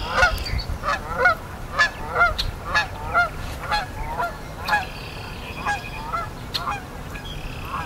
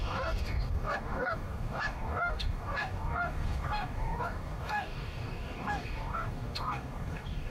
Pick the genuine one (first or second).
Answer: first